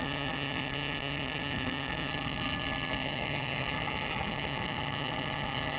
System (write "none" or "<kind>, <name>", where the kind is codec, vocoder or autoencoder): vocoder, HiFi-GAN